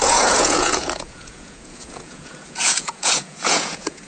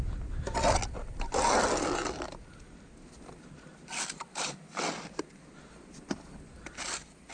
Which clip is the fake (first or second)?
first